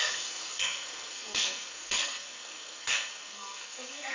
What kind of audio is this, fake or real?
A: fake